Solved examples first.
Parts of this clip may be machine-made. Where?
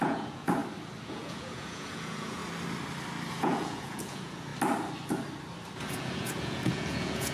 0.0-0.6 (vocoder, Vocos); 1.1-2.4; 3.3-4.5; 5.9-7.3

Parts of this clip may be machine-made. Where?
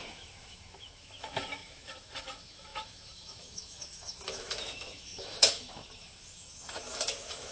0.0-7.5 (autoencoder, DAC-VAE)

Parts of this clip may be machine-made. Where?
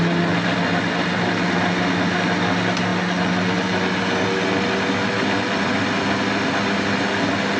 none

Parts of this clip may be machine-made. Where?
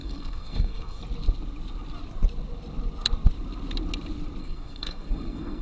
0.0-1.0 (codec, SNAC); 4.4-5.6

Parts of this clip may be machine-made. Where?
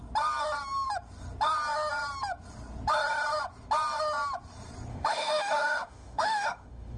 4.9-7.0 (autoencoder, DAC-VAE)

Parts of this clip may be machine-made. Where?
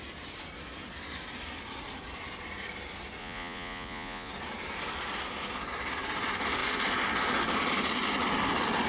3.2-4.3 (vocoder, Vocos)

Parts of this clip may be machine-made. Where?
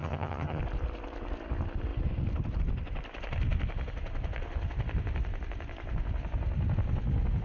0.0-0.6 (vocoder, HiFi-GAN)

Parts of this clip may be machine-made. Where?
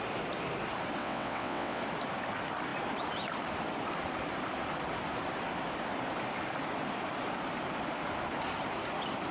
1.0-1.8 (vocoder, WaveNeXt)